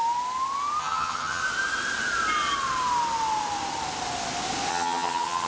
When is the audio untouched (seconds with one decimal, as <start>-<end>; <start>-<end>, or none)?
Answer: 0.0-0.8; 1.4-4.7